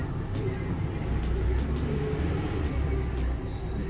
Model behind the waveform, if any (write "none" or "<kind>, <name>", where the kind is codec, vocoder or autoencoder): none